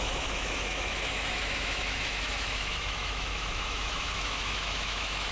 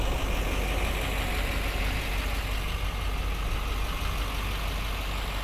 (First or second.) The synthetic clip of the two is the first